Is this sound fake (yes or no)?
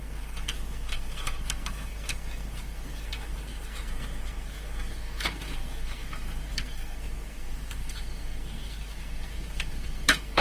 yes